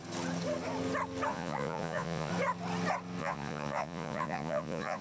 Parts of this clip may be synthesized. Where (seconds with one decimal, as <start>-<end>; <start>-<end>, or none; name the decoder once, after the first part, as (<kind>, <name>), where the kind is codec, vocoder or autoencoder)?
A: 1.3-2.3 (vocoder, Vocos); 3.2-5.0